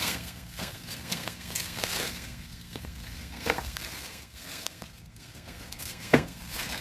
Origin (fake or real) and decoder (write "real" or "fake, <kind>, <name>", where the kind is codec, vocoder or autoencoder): fake, codec, SNAC